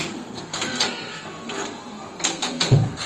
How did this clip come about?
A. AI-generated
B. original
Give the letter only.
A